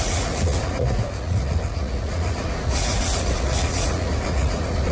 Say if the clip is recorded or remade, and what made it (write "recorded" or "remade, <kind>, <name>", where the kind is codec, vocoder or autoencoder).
remade, vocoder, Vocos